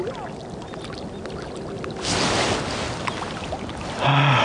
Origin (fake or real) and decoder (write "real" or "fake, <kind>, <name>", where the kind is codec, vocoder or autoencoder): real